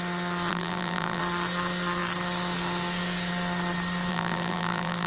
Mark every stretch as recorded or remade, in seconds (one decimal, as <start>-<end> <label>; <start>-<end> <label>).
0.0-0.5 recorded; 0.5-1.2 remade; 1.2-4.1 recorded; 4.1-5.1 remade